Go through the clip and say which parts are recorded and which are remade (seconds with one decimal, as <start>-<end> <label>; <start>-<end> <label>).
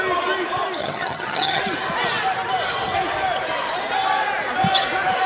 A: 0.0-0.8 recorded; 0.8-1.6 remade; 1.6-5.3 recorded